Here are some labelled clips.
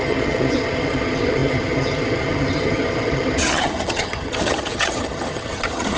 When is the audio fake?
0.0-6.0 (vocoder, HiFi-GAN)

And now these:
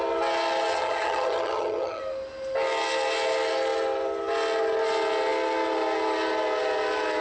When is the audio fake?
0.7-2.0 (vocoder, HiFi-GAN)

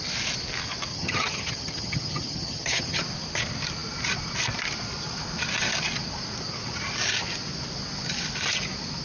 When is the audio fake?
0.9-3.0 (vocoder, HiFi-GAN)

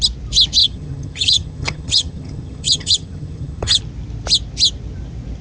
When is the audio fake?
0.6-3.8 (vocoder, HiFi-GAN)

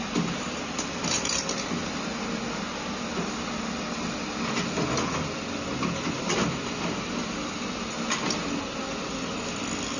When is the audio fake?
none